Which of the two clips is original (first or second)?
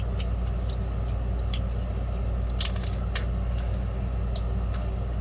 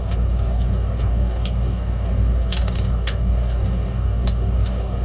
first